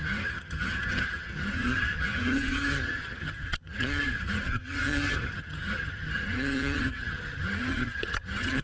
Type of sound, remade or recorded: remade